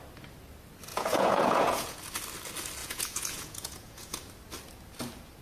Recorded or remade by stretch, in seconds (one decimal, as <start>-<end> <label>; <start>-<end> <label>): 0.0-0.9 recorded; 0.9-2.0 remade; 2.0-2.8 recorded; 2.8-4.3 remade; 4.3-5.4 recorded